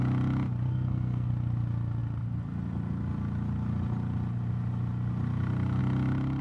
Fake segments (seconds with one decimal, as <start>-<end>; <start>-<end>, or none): 0.7-1.3